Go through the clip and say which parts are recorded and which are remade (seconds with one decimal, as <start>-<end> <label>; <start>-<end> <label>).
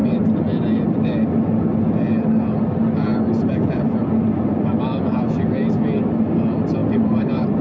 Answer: 0.0-1.1 remade; 1.1-6.8 recorded; 6.8-7.6 remade